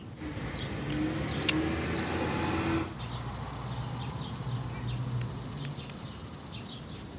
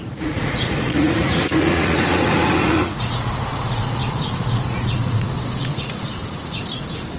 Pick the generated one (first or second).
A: second